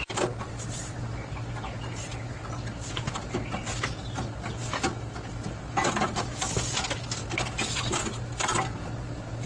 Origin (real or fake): real